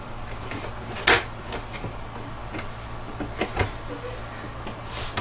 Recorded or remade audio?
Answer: recorded